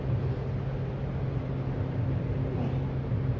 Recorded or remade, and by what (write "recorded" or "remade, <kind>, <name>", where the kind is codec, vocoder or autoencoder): recorded